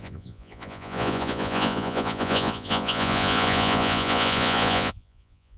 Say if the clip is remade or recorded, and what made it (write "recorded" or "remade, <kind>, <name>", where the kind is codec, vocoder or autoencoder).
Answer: remade, vocoder, Vocos